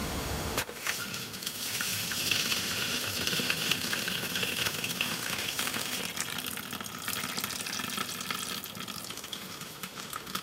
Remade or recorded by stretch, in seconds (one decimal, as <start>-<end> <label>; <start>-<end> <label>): 0.0-6.0 remade; 6.0-9.1 recorded; 9.1-10.4 remade